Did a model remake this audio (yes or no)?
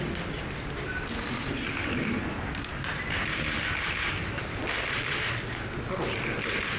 no